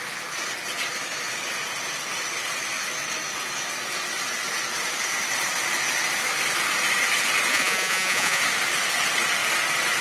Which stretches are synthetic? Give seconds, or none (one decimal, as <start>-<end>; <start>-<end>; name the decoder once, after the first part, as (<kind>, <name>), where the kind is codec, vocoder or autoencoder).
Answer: 7.5-8.4 (vocoder, Vocos)